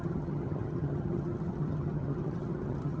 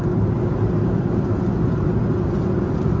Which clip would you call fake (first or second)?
first